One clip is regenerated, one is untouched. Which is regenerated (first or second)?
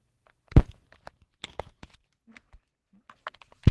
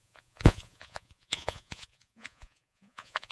second